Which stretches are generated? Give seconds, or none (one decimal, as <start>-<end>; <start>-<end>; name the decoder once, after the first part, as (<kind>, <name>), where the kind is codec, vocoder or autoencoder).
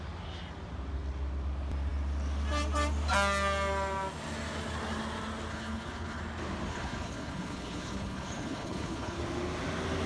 5.5-6.2 (codec, HILCodec); 6.7-9.2